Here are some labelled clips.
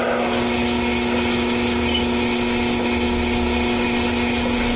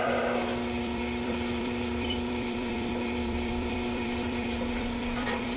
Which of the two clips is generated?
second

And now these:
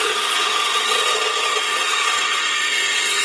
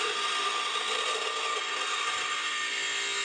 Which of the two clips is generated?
first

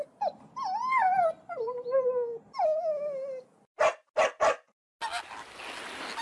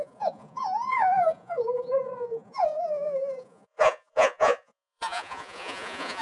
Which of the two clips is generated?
second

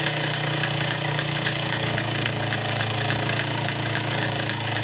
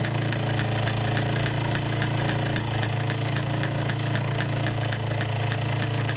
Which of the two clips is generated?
first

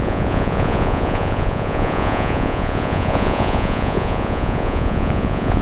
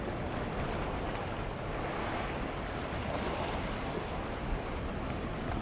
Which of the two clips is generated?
first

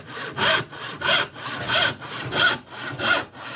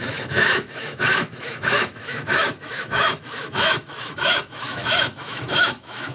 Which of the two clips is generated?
second